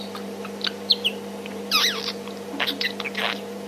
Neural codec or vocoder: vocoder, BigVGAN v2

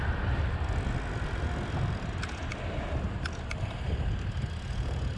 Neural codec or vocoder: none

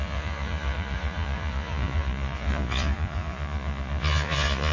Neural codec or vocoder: vocoder, Vocos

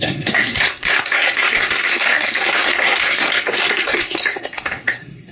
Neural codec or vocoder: codec, SNAC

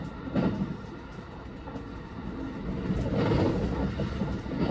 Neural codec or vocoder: none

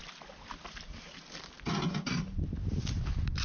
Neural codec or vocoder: none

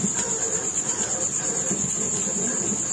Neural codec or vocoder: none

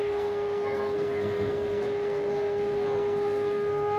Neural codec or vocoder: codec, SNAC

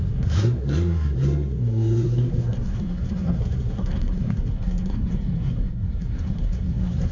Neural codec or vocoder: codec, SNAC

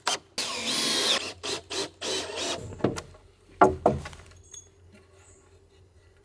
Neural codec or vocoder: none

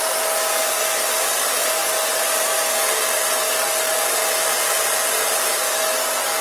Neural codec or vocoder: none